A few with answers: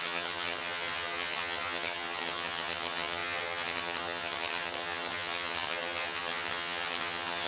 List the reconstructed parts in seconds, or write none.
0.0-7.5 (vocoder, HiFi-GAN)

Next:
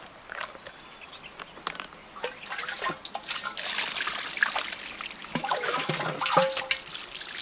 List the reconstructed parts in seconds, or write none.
5.2-5.9 (autoencoder, DAC-VAE)

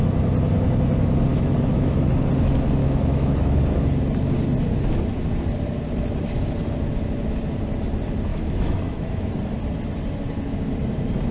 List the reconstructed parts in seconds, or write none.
1.3-2.1 (autoencoder, DAC-VAE); 2.8-3.6; 8.3-9.3